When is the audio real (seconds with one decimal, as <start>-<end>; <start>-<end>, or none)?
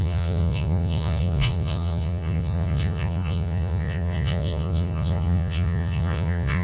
none